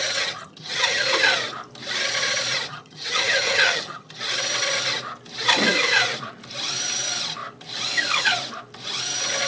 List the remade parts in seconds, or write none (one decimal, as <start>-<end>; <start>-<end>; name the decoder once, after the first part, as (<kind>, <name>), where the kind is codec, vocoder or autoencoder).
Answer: 0.0-1.0 (vocoder, HiFi-GAN); 2.7-4.2